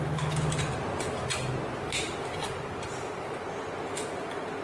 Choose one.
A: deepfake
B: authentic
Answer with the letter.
B